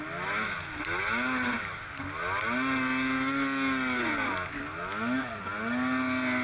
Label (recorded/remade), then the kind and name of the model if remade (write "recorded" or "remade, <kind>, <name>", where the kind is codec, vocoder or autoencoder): recorded